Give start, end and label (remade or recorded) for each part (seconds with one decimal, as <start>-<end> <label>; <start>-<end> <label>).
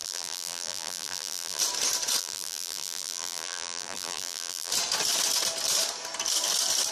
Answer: 0.0-1.6 remade; 1.6-2.2 recorded; 2.2-4.7 remade; 4.7-6.9 recorded